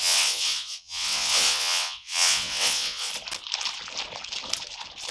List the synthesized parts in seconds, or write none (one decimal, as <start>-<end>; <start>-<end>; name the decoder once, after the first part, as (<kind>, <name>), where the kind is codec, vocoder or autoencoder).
0.0-3.1 (vocoder, WaveNeXt)